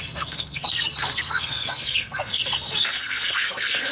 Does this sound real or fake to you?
fake